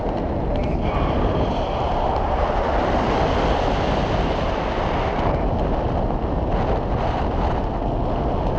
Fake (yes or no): no